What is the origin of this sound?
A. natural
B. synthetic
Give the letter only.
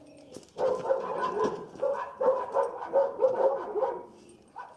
A